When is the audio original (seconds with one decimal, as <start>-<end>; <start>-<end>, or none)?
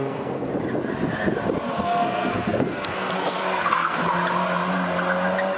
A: 0.5-1.7; 4.0-5.6